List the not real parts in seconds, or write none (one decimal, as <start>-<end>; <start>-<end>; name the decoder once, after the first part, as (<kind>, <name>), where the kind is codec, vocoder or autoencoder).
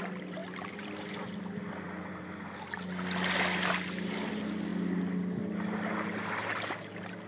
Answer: none